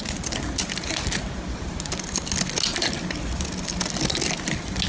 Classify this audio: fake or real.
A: real